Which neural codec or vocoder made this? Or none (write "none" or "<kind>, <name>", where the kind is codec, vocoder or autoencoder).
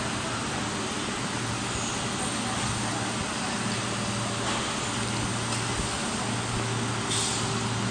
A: none